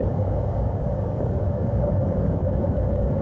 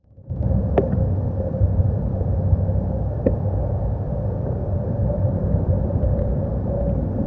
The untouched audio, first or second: second